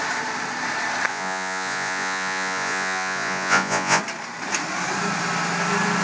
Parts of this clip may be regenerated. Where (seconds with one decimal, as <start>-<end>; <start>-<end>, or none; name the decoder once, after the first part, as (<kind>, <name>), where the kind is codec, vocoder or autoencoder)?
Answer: 1.1-4.0 (vocoder, Vocos)